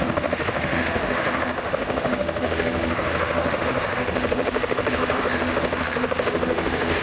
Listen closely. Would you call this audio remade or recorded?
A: remade